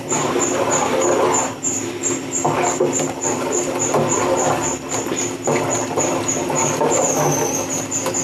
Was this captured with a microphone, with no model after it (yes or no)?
no